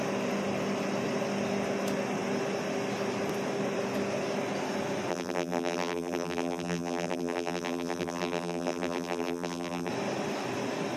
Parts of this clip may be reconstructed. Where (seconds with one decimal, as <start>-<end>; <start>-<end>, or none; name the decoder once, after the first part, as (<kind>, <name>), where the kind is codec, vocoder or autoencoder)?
5.1-9.9 (vocoder, BigVGAN v2)